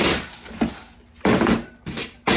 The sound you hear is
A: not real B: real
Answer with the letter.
B